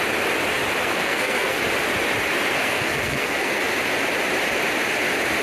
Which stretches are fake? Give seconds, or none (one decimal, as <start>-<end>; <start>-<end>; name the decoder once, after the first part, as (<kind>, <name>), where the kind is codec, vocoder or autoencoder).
0.8-1.6 (codec, SNAC); 2.5-3.6